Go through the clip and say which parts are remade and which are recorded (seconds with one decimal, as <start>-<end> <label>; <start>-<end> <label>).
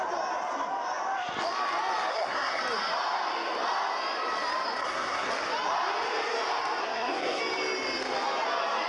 0.0-2.1 recorded; 2.1-2.6 remade; 2.6-4.8 recorded; 4.8-5.3 remade; 5.3-6.8 recorded; 6.8-7.4 remade; 7.4-8.9 recorded